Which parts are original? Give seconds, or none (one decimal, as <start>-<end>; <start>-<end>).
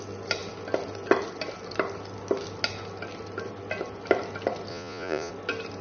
0.0-4.7; 5.3-5.8